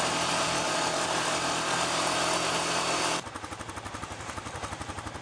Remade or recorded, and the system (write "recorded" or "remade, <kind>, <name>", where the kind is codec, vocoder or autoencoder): remade, vocoder, BigVGAN v2